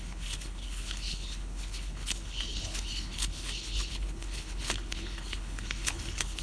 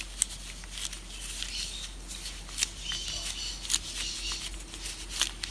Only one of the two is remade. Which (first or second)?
first